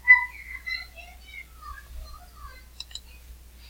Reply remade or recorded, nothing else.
recorded